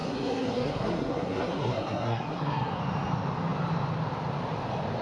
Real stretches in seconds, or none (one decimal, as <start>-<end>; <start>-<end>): 2.8-5.0